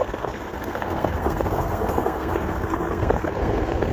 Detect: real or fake fake